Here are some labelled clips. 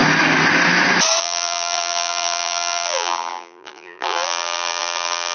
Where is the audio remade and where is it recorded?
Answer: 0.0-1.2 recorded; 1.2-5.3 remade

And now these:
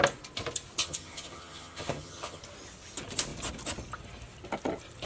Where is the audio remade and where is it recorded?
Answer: 0.0-0.8 recorded; 0.8-2.4 remade; 2.4-5.0 recorded

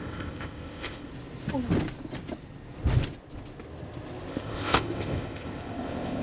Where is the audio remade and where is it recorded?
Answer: 0.0-1.1 remade; 1.1-4.3 recorded; 4.3-6.2 remade

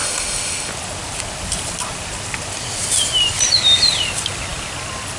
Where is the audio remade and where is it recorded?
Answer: 0.0-0.7 remade; 0.7-5.2 recorded